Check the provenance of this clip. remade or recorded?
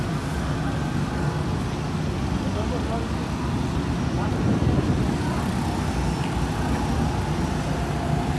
recorded